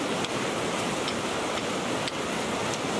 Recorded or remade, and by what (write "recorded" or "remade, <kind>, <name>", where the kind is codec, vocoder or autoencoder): recorded